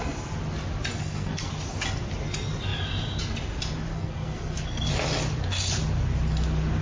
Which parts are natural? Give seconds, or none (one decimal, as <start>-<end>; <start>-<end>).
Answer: 0.0-0.9; 1.5-3.9; 4.9-6.8

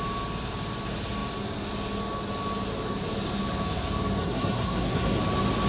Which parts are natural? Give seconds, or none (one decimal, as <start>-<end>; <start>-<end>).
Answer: 0.0-4.2; 5.2-5.7

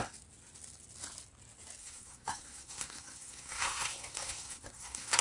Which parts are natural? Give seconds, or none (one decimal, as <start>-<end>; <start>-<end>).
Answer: 0.0-1.8

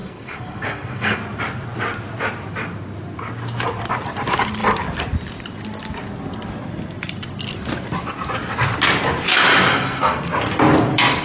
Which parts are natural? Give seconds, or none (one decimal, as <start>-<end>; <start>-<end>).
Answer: 1.2-9.7; 10.3-11.2

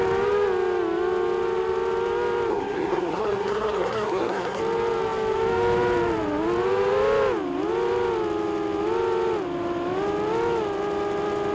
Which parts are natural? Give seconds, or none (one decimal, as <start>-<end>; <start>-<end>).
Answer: 0.0-2.5; 4.6-11.5

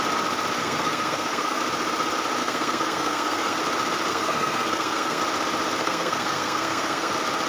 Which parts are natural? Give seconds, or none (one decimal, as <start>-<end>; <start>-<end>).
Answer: 0.0-0.6; 1.6-2.4; 3.6-4.1; 5.2-5.8; 7.1-7.5

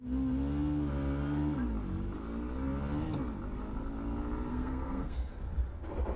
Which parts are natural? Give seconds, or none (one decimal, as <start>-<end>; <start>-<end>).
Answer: 0.0-4.5; 5.3-6.2